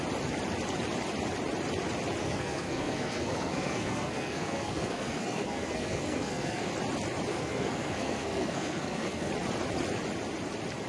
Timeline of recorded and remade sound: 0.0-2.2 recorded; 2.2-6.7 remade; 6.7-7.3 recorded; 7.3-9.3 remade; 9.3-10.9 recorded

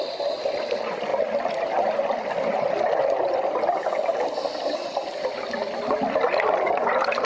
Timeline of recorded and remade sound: 0.0-7.3 remade

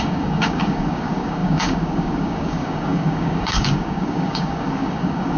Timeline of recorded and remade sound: 0.0-5.4 remade

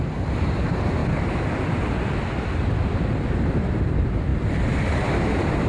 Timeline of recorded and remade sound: 0.0-5.7 recorded

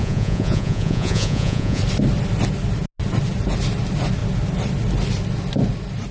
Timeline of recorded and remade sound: 0.0-1.8 remade; 1.8-6.1 recorded

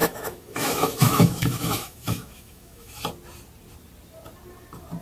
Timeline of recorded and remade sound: 0.0-3.0 remade; 3.0-5.0 recorded

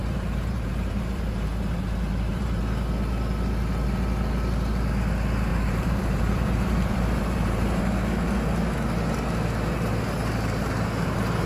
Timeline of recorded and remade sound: 0.0-2.6 remade; 2.6-5.5 recorded; 5.5-7.8 remade; 7.8-11.5 recorded